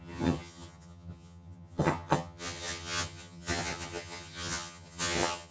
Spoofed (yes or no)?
yes